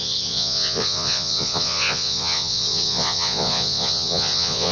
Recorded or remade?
remade